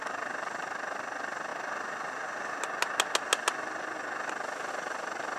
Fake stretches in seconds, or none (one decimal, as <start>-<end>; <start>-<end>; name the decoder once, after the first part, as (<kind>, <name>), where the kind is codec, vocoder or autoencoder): none